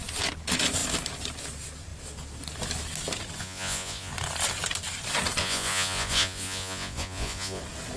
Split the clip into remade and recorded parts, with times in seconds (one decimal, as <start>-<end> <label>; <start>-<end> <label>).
0.0-3.4 recorded; 3.4-4.1 remade; 4.1-5.4 recorded; 5.4-7.6 remade; 7.6-8.0 recorded